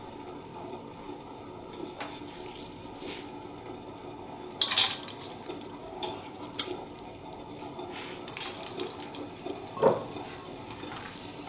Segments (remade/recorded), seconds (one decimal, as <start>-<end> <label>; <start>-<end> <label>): 0.0-5.8 recorded; 5.8-6.4 remade; 6.4-11.5 recorded